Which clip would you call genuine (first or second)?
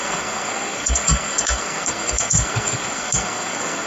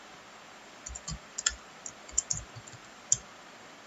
second